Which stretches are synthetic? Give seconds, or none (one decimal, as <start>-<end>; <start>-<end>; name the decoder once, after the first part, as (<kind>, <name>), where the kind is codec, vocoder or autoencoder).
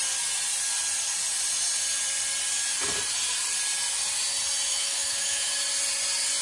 4.7-5.5 (autoencoder, DAC-VAE)